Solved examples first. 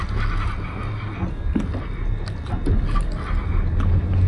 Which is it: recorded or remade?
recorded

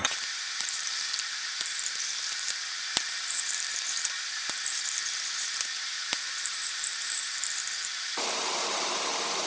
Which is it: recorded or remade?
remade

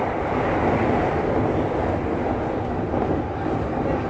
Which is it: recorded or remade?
recorded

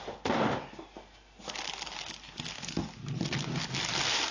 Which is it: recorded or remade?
recorded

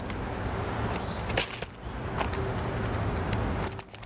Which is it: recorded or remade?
recorded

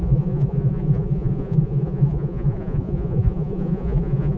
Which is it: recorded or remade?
remade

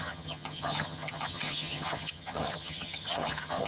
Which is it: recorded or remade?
remade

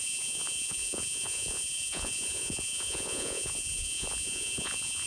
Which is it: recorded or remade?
remade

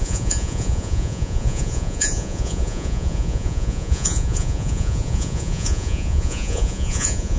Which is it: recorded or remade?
remade